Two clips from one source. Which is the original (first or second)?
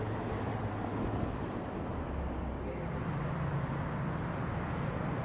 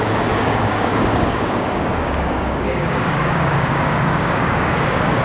first